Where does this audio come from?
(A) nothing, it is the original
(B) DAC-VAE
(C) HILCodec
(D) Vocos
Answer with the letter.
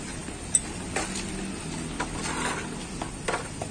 A